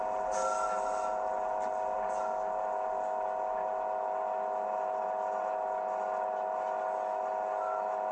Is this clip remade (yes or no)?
no